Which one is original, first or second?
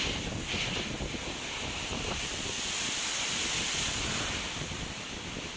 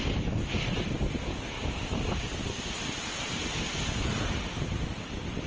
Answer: second